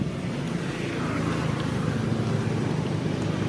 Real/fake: real